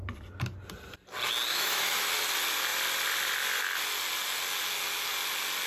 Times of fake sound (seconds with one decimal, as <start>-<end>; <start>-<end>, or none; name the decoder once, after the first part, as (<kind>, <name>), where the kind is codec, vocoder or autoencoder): 1.5-2.1 (autoencoder, DAC-VAE)